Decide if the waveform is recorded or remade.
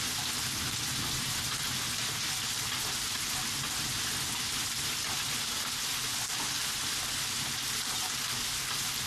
recorded